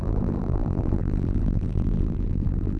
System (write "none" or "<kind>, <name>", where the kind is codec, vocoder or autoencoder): vocoder, BigVGAN v2